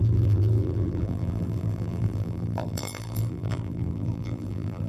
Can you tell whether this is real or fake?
fake